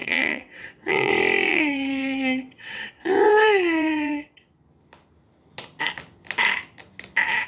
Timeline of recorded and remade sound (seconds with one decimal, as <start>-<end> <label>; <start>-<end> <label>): 0.0-1.1 remade; 1.1-1.5 recorded; 1.5-4.5 remade; 4.5-7.5 recorded